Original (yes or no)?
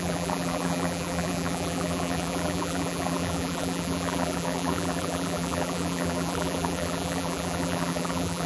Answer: no